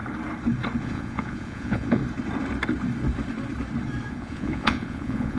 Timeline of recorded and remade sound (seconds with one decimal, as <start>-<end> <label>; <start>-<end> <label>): 0.0-0.8 recorded; 0.8-2.0 remade; 2.0-4.1 recorded; 4.1-5.4 remade